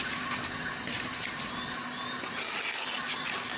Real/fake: real